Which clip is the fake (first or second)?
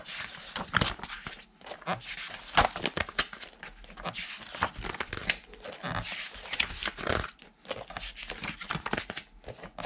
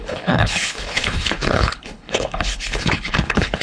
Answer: second